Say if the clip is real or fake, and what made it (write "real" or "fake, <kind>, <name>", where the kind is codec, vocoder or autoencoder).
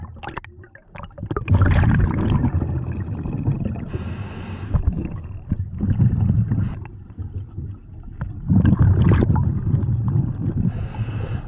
real